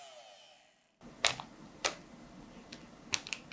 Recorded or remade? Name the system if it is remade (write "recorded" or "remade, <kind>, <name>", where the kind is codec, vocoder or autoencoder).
recorded